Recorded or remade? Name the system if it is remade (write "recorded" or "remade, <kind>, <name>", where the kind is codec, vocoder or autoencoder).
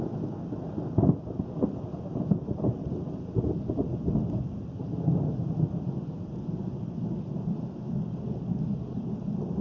recorded